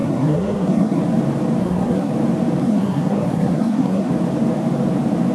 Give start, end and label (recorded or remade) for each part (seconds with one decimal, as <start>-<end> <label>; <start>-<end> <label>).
0.0-1.0 remade; 1.0-1.6 recorded; 1.6-2.1 remade; 2.1-2.6 recorded; 2.6-4.1 remade; 4.1-5.3 recorded